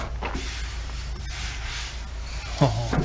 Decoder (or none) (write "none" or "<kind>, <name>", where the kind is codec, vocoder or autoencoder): none